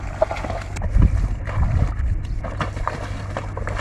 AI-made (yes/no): no